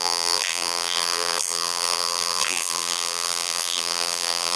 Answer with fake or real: fake